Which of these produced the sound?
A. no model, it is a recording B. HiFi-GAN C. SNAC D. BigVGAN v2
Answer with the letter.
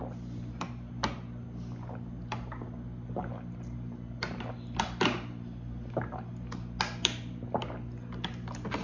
A